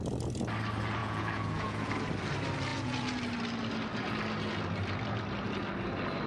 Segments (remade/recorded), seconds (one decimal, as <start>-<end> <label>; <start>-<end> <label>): 0.0-1.0 recorded; 1.0-1.9 remade; 1.9-2.7 recorded; 2.7-3.2 remade; 3.2-6.3 recorded